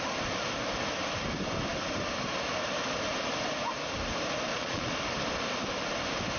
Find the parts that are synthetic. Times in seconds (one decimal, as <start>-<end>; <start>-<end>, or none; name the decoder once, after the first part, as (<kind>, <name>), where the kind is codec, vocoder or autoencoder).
4.5-5.0 (vocoder, Vocos)